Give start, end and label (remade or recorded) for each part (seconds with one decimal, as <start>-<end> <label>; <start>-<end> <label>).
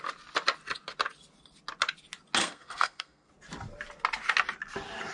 0.0-2.4 recorded; 2.4-3.3 remade; 3.3-5.1 recorded